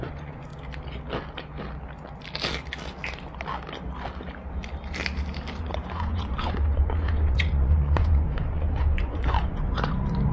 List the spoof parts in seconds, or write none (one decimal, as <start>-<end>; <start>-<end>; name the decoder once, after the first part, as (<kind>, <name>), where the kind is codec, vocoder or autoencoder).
0.0-0.5 (vocoder, Vocos); 5.6-10.3